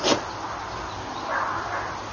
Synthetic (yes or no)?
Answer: no